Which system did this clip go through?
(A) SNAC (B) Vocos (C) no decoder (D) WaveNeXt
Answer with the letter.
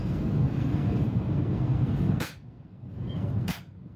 A